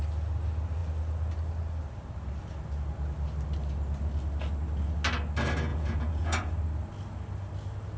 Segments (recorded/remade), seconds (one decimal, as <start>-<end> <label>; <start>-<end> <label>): 0.0-5.7 recorded; 5.7-6.5 remade; 6.5-8.0 recorded